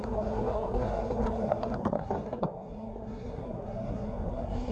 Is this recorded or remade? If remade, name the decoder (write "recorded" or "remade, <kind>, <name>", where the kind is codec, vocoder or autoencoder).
remade, codec, SNAC